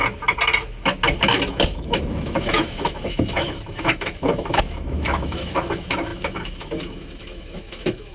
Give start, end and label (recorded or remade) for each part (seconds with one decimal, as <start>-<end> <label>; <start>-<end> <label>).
0.0-1.2 recorded; 1.2-8.1 remade